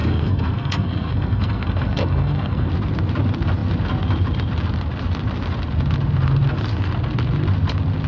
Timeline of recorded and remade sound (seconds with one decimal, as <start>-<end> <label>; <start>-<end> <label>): 0.0-2.7 remade; 2.7-8.1 recorded